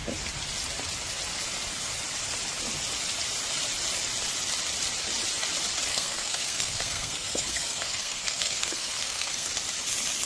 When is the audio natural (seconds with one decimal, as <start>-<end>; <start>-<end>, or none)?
0.0-5.9; 9.5-10.3